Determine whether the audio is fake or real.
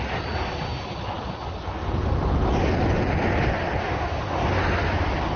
real